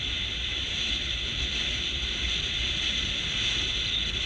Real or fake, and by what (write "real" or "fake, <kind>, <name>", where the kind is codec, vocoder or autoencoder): real